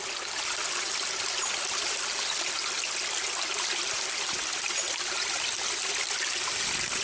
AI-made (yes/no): no